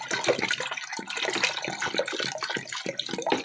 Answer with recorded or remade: recorded